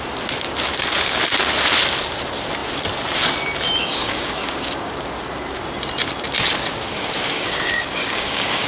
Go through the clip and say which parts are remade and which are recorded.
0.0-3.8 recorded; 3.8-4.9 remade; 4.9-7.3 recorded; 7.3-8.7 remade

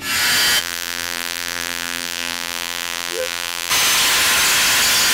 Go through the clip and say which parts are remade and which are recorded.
0.0-0.6 recorded; 0.6-3.7 remade; 3.7-5.1 recorded

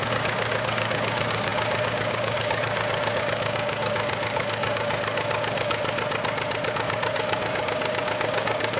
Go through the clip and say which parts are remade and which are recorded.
0.0-5.8 remade; 5.8-6.7 recorded; 6.7-8.8 remade

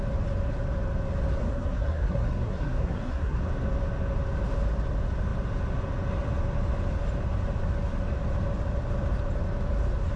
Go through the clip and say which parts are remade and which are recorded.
0.0-1.4 recorded; 1.4-3.4 remade; 3.4-10.2 recorded

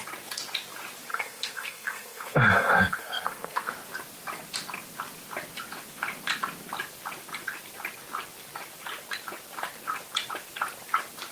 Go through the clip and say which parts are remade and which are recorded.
0.0-1.1 recorded; 1.1-3.7 remade; 3.7-11.3 recorded